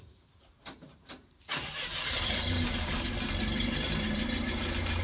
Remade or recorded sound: remade